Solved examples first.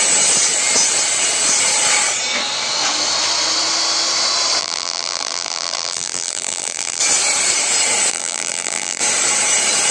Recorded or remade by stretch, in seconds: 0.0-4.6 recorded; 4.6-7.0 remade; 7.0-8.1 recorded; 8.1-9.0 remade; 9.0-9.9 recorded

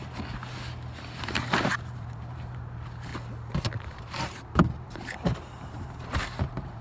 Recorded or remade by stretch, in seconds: 0.0-1.2 recorded; 1.2-3.1 remade; 3.1-3.8 recorded; 3.8-6.8 remade

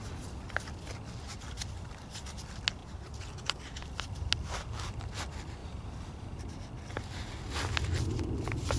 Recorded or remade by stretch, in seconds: 0.0-5.6 recorded; 5.6-6.4 remade; 6.4-8.8 recorded

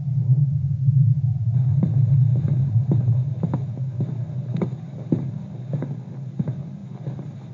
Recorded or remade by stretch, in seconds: 0.0-6.8 recorded; 6.8-7.5 remade

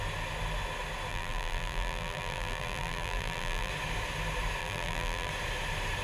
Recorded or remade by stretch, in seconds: 0.0-1.1 recorded; 1.1-3.7 remade; 3.7-4.6 recorded; 4.6-5.3 remade; 5.3-6.0 recorded

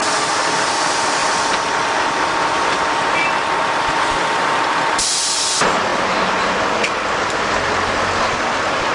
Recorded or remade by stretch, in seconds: 0.0-1.2 remade; 1.2-3.6 recorded; 3.6-5.9 remade; 5.9-7.7 recorded; 7.7-8.9 remade